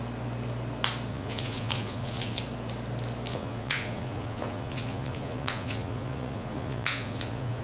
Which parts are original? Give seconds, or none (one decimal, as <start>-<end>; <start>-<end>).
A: 0.0-1.1; 2.4-3.3